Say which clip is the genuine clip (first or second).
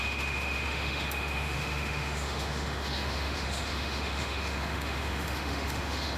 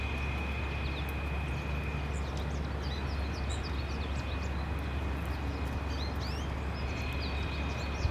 second